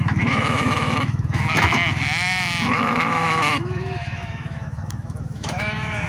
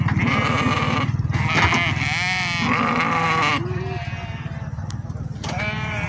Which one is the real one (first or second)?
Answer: second